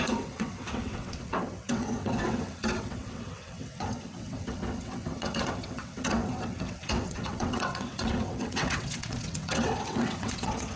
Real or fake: fake